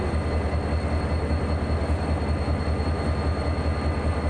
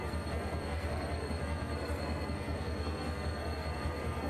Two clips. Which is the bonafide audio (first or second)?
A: first